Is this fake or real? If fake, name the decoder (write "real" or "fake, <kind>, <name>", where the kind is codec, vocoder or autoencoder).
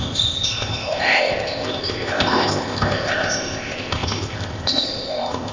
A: fake, codec, ZipCodec